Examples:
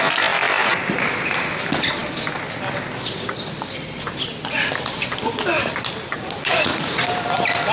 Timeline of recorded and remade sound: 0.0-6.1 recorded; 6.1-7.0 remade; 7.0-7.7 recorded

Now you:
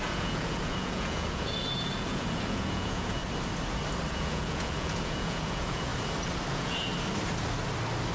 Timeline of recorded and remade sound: 0.0-3.2 remade; 3.2-4.1 recorded; 4.1-5.9 remade; 5.9-6.5 recorded; 6.5-6.9 remade; 6.9-8.1 recorded

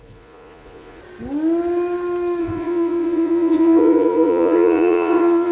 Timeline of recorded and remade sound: 0.0-1.0 remade; 1.0-2.4 recorded; 2.4-5.5 remade

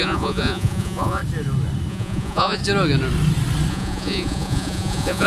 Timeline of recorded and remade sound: 0.0-1.2 remade; 1.2-1.9 recorded; 1.9-2.6 remade; 2.6-3.7 recorded; 3.7-5.3 remade

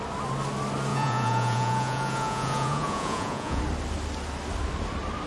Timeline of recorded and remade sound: 0.0-0.9 recorded; 0.9-3.6 remade; 3.6-5.3 recorded

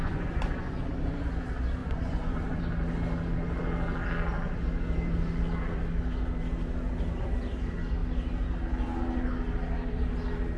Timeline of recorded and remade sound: 0.0-0.8 remade; 0.8-1.8 recorded; 1.8-2.6 remade; 2.6-10.6 recorded

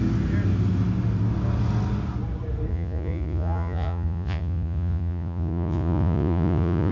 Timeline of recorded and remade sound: 0.0-2.7 recorded; 2.7-6.9 remade